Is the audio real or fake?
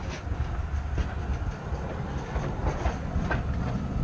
real